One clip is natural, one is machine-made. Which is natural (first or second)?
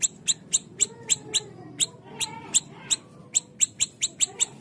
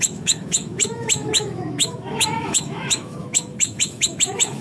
first